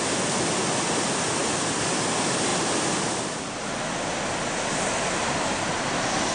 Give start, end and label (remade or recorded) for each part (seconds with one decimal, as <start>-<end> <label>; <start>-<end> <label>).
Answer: 0.0-6.3 recorded